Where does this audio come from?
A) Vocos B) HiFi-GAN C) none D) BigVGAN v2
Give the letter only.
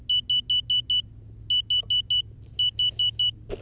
C